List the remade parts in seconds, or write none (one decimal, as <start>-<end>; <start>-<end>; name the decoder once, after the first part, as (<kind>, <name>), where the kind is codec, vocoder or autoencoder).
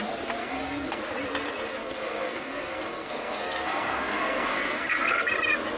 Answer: 0.4-1.0 (codec, SNAC); 1.8-5.3